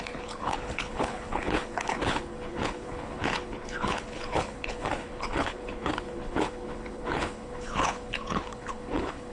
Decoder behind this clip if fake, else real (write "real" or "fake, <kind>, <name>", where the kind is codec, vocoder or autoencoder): fake, codec, HILCodec